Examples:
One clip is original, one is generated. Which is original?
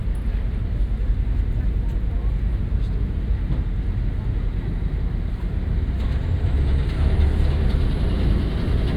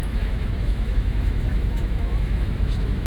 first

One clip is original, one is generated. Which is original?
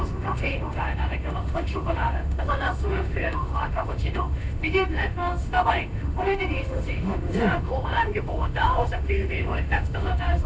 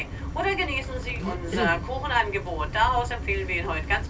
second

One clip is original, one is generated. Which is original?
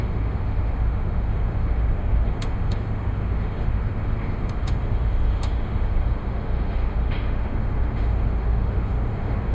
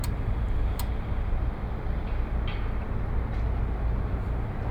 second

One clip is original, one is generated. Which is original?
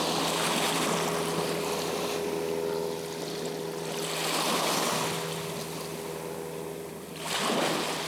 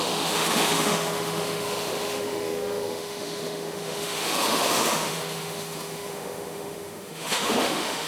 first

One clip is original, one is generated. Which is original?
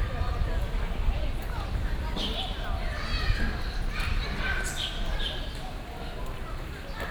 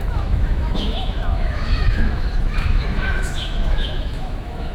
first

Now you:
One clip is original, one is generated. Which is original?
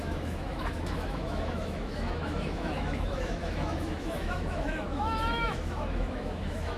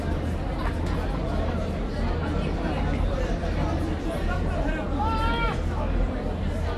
second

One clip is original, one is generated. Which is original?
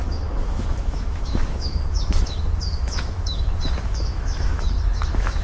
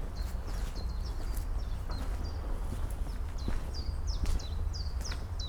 second